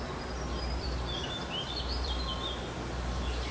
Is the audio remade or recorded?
remade